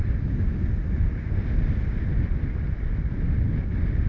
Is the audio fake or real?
real